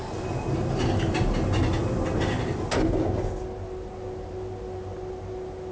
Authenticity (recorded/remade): recorded